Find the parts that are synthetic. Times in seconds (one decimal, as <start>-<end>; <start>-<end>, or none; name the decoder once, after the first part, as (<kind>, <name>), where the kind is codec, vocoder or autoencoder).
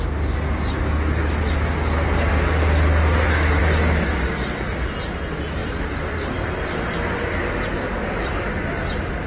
5.6-6.6 (vocoder, BigVGAN v2)